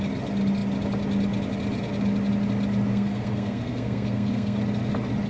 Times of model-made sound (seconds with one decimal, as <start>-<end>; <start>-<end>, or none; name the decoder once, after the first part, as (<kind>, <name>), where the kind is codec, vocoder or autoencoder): 2.9-4.6 (codec, SNAC)